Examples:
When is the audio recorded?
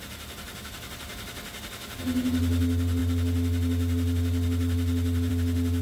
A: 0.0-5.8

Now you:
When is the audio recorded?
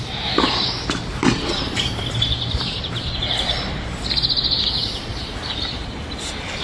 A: 0.0-1.2; 4.1-5.1; 6.0-6.6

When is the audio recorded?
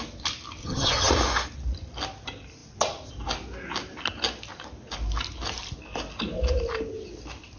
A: 0.0-0.6; 1.1-7.6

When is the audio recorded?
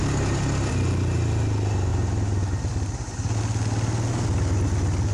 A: 0.0-5.1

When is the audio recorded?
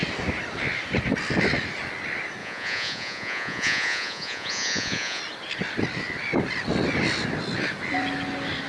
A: 0.0-2.4; 5.2-8.7